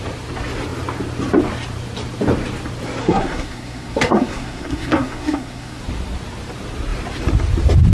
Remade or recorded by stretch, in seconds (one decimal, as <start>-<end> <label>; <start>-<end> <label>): 0.0-3.0 recorded; 3.0-5.8 remade; 5.8-7.9 recorded